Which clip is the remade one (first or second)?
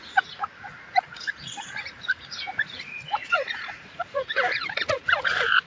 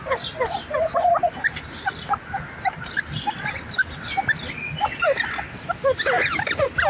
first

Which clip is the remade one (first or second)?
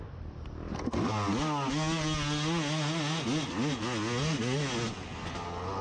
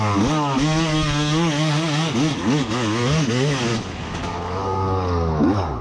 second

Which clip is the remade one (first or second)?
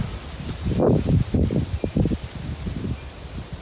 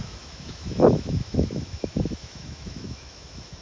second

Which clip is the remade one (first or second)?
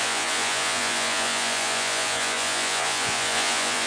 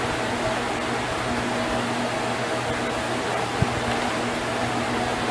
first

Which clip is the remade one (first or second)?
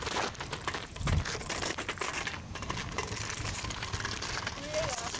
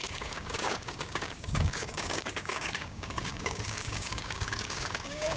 second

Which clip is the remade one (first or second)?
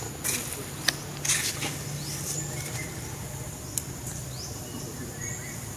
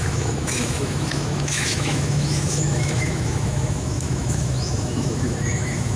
second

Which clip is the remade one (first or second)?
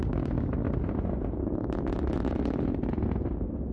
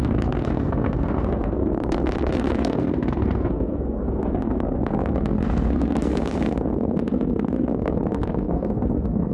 second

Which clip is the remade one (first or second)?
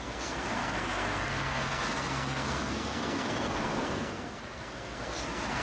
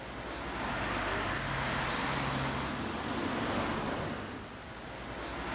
first